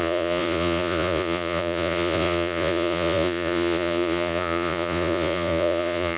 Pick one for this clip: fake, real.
fake